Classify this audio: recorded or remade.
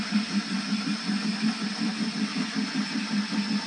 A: recorded